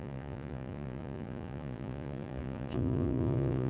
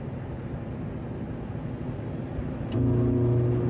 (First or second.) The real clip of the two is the second